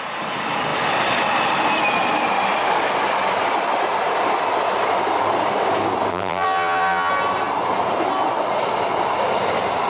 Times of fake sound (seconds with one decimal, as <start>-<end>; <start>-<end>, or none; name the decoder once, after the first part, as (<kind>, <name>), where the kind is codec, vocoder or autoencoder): 6.1-7.1 (vocoder, BigVGAN v2)